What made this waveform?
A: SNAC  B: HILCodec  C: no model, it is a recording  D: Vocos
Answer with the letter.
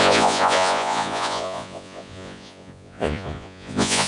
D